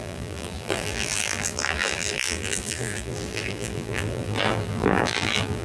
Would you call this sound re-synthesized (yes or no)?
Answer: yes